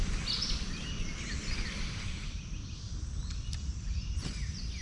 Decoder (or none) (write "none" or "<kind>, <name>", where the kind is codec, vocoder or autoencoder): none